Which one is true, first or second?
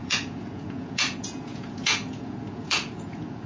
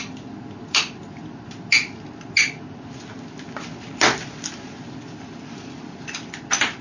second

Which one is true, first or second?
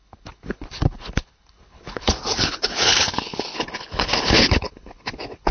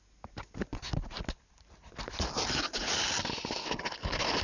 second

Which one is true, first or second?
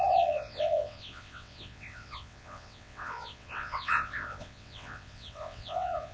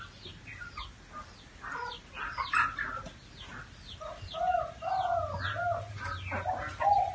second